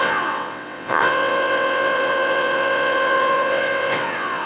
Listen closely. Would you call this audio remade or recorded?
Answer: remade